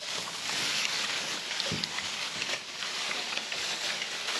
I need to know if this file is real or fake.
fake